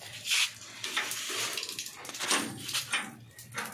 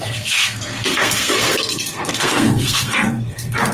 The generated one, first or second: second